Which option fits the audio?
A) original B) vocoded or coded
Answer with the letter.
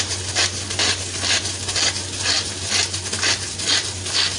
A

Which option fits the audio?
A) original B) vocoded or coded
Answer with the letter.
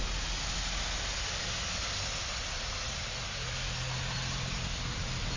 A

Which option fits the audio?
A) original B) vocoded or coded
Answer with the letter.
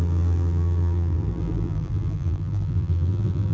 B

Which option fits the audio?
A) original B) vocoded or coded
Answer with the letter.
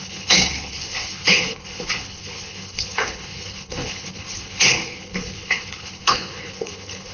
B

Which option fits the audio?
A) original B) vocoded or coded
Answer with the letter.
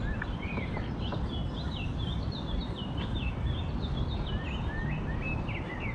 A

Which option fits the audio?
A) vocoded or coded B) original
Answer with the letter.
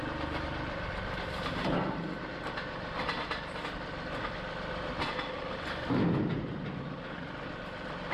B